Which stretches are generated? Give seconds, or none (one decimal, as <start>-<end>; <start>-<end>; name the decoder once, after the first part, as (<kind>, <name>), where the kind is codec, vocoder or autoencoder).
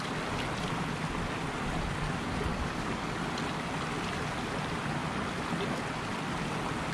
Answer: 2.5-3.3 (codec, DAC)